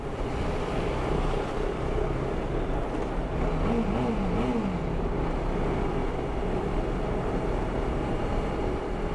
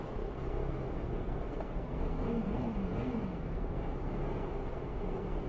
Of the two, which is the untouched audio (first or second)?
first